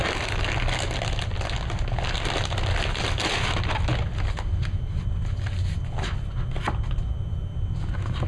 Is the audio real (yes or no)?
yes